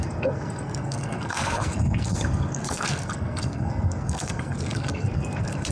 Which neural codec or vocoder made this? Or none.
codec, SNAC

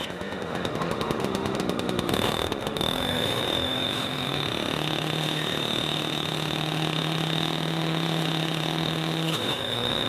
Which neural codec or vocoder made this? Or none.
autoencoder, DAC-VAE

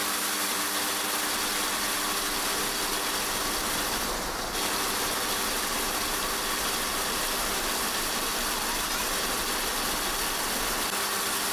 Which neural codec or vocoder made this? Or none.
none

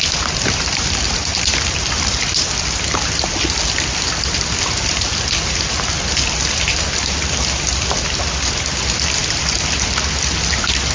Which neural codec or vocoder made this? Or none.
vocoder, BigVGAN v2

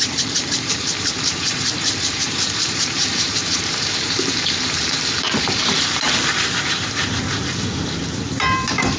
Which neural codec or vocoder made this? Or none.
vocoder, BigVGAN v2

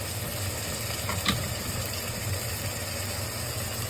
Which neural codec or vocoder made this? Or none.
none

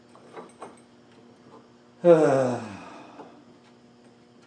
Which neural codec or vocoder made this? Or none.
none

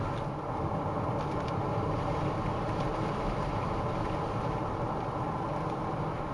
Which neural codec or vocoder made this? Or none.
none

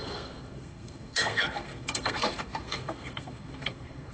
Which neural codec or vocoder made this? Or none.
codec, SNAC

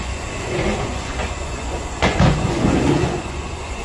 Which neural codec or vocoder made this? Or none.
vocoder, Vocos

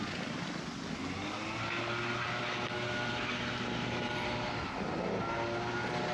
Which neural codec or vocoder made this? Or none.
none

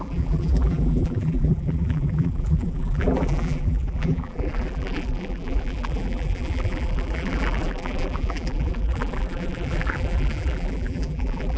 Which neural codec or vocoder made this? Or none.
vocoder, BigVGAN v2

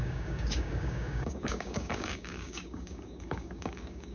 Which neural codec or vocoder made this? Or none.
codec, DAC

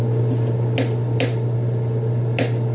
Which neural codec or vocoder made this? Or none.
none